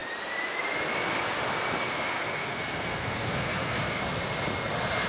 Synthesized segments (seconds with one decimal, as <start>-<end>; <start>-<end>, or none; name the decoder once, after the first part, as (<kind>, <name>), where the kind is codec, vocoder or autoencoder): 1.9-4.0 (codec, SNAC)

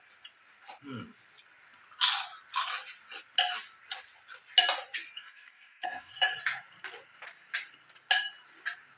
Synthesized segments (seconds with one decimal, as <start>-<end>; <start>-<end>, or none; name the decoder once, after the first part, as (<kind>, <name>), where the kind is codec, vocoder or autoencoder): 5.2-6.1 (codec, DAC)

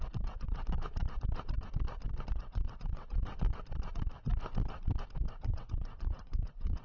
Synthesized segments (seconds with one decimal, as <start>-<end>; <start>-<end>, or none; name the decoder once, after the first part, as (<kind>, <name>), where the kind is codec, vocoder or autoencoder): 0.0-0.8 (vocoder, WaveNeXt); 2.3-3.2; 5.3-6.8